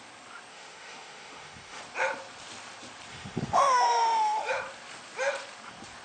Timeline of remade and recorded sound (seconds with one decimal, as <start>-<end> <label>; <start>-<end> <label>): 0.0-0.5 recorded; 0.5-1.8 remade; 1.8-3.1 recorded; 3.1-4.5 remade; 4.5-6.0 recorded

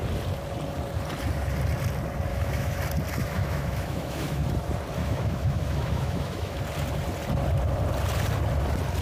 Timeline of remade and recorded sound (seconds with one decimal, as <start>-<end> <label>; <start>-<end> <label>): 0.0-2.3 recorded; 2.3-2.8 remade; 2.8-3.2 recorded; 3.2-4.4 remade; 4.4-5.0 recorded; 5.0-6.6 remade; 6.6-9.0 recorded

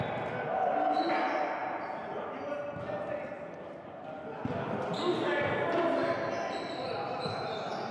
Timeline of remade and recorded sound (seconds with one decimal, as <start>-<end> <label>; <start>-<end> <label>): 0.0-7.9 recorded

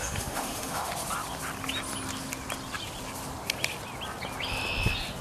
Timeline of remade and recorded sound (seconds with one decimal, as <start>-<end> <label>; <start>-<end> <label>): 0.0-0.9 remade; 0.9-5.2 recorded

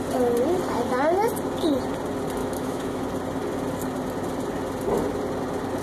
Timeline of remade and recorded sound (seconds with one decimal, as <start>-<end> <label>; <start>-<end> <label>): 0.0-2.4 recorded; 2.4-3.0 remade; 3.0-5.8 recorded

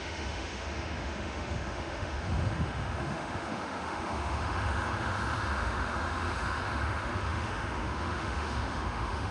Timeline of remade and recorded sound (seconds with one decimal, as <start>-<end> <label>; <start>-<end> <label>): 0.0-9.3 remade

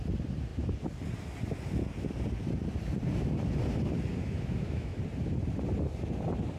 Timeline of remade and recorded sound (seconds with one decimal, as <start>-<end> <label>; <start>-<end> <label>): 0.0-4.2 recorded; 4.2-5.0 remade; 5.0-6.6 recorded

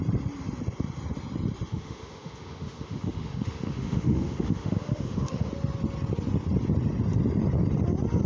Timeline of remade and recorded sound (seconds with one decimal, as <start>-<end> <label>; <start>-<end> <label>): 0.0-1.7 recorded; 1.7-5.5 remade; 5.5-8.3 recorded